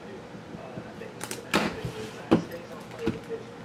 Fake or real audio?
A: real